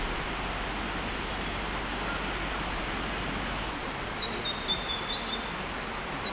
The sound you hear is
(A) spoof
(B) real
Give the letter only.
B